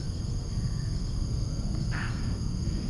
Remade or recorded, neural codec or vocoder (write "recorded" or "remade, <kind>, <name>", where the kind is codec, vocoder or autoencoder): remade, codec, SNAC